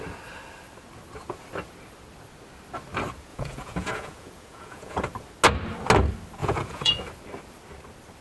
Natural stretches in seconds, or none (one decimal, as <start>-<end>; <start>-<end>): 0.0-3.3; 5.0-6.4; 7.1-8.2

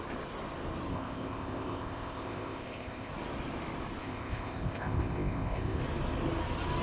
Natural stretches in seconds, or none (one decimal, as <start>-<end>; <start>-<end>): 0.0-0.9; 3.1-4.0; 5.8-6.8

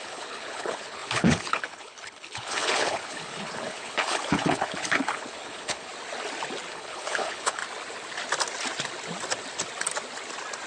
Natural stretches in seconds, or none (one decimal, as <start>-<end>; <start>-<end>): 5.9-6.7; 7.6-10.7